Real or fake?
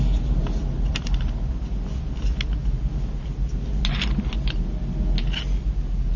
real